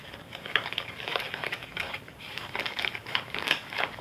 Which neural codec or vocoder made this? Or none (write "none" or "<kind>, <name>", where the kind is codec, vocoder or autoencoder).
codec, DAC